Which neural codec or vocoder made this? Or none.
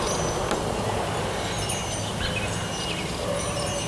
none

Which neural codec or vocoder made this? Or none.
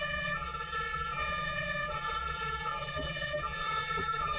vocoder, BigVGAN v2